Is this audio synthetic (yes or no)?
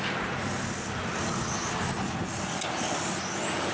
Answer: no